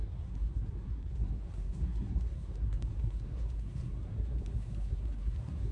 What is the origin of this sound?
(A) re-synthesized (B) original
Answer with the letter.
A